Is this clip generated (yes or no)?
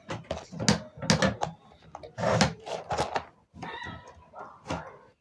no